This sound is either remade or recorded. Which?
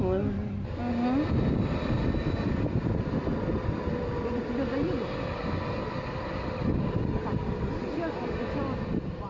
recorded